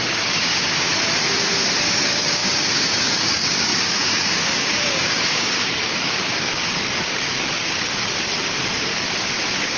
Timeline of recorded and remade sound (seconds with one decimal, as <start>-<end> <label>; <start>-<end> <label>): 0.0-0.9 remade; 0.9-1.8 recorded; 1.8-8.0 remade; 8.0-8.6 recorded; 8.6-9.8 remade